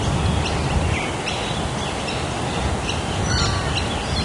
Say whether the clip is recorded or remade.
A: recorded